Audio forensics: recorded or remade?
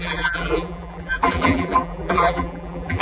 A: remade